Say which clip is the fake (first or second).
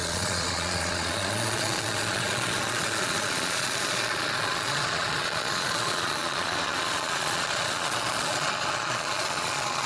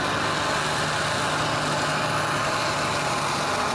first